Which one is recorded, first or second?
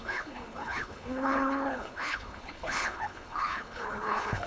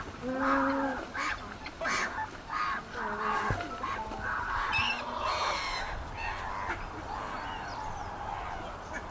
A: second